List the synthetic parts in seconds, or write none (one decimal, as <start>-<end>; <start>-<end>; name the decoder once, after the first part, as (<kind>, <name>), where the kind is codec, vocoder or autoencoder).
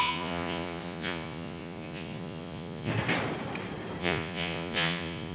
0.0-2.9 (vocoder, Vocos); 4.0-5.3